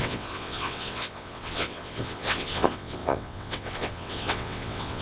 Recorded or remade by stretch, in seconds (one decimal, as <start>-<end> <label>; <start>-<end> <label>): 0.0-5.0 remade